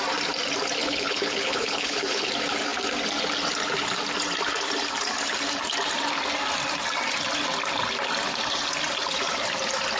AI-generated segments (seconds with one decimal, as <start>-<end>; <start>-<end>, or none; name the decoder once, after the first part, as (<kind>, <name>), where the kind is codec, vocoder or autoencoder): 0.8-2.3 (codec, HILCodec)